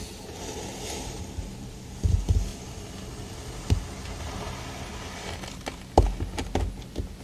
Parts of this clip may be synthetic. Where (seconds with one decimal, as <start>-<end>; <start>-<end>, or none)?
1.5-2.1